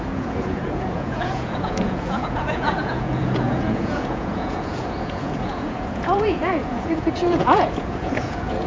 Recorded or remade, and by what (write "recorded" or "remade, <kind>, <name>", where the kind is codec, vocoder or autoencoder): remade, vocoder, Vocos